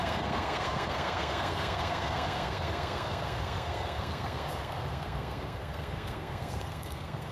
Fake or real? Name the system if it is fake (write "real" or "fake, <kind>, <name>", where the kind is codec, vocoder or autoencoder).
fake, codec, SNAC